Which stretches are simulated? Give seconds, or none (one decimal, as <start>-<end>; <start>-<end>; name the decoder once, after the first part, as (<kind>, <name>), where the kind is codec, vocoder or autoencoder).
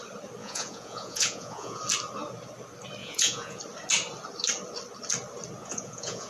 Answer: 0.4-1.8 (vocoder, Vocos); 3.0-3.6; 5.6-6.3